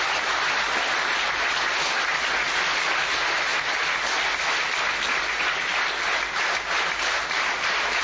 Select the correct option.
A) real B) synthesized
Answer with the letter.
A